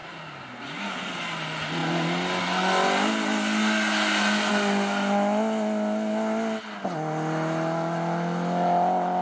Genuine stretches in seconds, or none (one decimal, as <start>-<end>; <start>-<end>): 0.6-9.2